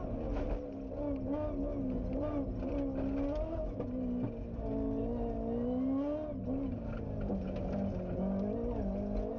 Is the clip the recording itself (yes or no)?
yes